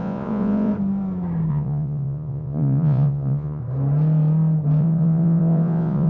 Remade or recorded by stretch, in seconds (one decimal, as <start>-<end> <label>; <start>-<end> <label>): 0.0-0.7 remade; 0.7-1.5 recorded; 1.5-3.6 remade; 3.6-4.8 recorded; 4.8-6.1 remade